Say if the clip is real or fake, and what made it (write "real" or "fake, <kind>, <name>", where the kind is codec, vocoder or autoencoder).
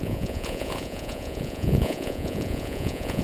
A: fake, vocoder, Vocos